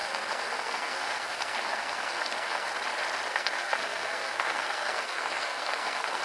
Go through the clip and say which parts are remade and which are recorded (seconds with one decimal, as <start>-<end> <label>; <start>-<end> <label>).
0.0-2.7 remade; 2.7-3.3 recorded; 3.3-6.2 remade